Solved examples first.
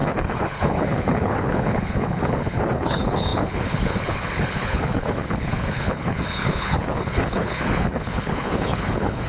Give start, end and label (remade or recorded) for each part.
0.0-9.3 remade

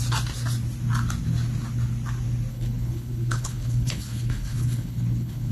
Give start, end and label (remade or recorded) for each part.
0.0-2.5 recorded; 2.5-5.5 remade

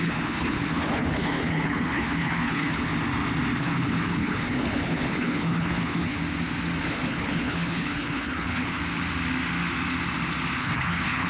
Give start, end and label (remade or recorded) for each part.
0.0-2.9 remade; 2.9-3.6 recorded; 3.6-6.2 remade; 6.2-6.8 recorded; 6.8-8.8 remade; 8.8-10.6 recorded; 10.6-11.3 remade

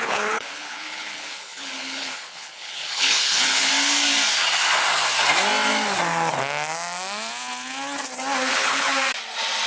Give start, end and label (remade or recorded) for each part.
0.0-3.7 remade; 3.7-8.5 recorded; 8.5-8.9 remade; 8.9-9.7 recorded

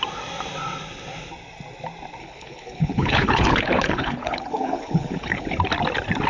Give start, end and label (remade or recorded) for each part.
0.0-2.2 recorded; 2.2-5.6 remade; 5.6-6.3 recorded

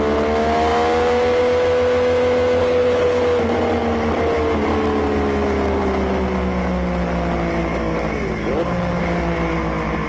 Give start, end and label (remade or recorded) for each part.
0.0-2.6 recorded; 2.6-3.2 remade; 3.2-10.1 recorded